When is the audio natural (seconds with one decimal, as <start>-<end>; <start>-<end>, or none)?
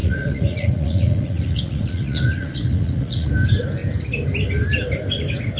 3.3-5.6